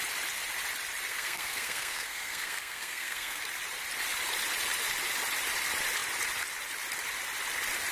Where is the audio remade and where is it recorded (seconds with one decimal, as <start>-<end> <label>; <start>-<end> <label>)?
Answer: 0.0-1.1 recorded; 1.1-3.4 remade; 3.4-7.9 recorded